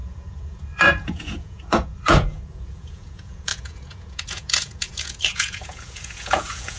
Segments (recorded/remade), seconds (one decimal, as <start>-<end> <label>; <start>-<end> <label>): 0.0-6.8 remade